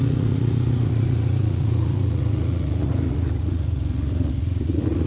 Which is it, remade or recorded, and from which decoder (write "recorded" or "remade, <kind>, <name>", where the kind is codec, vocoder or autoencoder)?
remade, vocoder, Vocos